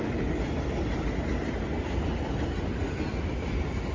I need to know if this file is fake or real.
real